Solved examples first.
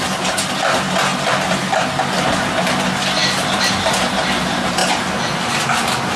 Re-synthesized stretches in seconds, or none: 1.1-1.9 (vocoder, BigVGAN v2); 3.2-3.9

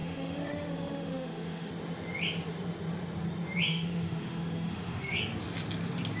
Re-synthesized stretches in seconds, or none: 0.0-1.7 (autoencoder, DAC-VAE); 3.7-5.2

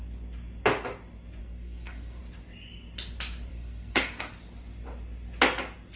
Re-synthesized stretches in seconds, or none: 1.4-2.2 (codec, SNAC); 3.5-4.3

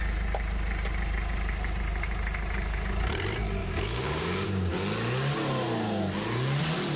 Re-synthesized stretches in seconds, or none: 3.6-4.7 (codec, DAC)

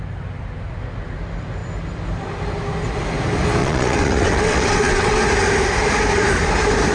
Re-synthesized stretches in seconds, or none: 3.6-5.2 (vocoder, WaveNeXt)

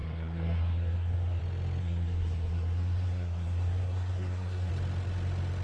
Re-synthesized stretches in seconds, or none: 0.0-1.4 (codec, SNAC); 1.8-4.7

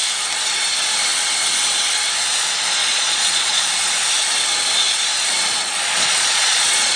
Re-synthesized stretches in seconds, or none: 2.8-3.7 (vocoder, Vocos); 5.6-7.0